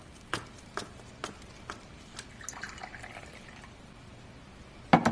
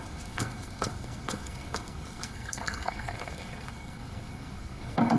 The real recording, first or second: first